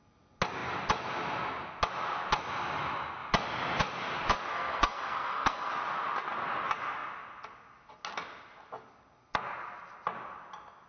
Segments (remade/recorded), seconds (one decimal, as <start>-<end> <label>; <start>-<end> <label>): 0.0-4.5 recorded; 4.5-5.7 remade; 5.7-10.9 recorded